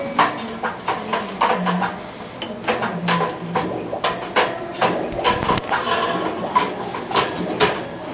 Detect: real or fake real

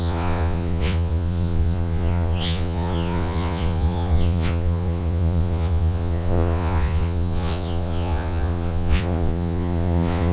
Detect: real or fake fake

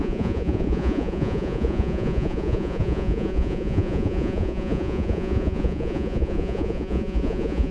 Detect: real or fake fake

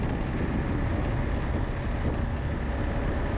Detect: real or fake real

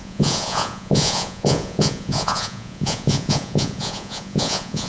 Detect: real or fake fake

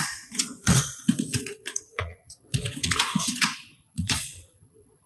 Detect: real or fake fake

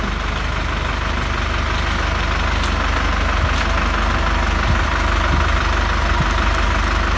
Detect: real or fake real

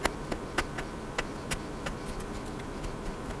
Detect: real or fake real